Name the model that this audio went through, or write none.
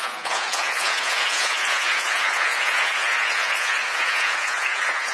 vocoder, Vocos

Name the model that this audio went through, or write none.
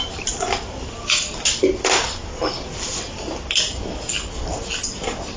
none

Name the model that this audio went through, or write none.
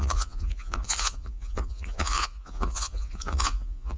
vocoder, Vocos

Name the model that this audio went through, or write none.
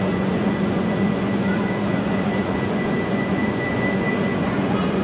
vocoder, Vocos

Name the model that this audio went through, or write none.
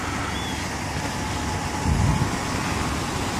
none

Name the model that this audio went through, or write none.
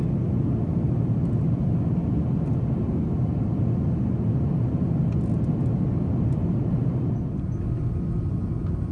none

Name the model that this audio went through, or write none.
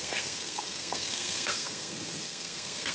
codec, SNAC